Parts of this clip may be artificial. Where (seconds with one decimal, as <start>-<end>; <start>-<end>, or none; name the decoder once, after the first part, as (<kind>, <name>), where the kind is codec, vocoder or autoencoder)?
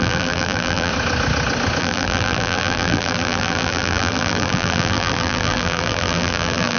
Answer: 0.0-0.9 (vocoder, BigVGAN v2); 1.8-6.8